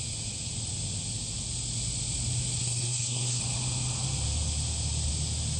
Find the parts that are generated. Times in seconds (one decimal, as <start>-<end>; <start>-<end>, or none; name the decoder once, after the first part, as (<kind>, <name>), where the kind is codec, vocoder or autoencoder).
2.6-3.4 (codec, SNAC)